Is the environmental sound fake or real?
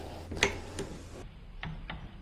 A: real